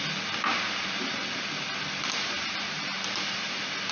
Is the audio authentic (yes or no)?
yes